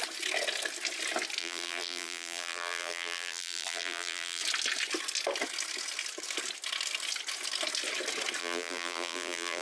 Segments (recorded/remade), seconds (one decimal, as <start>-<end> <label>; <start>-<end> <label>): 0.0-1.4 recorded; 1.4-4.4 remade; 4.4-8.4 recorded; 8.4-9.6 remade